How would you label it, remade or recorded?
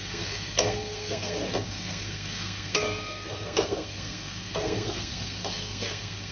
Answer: remade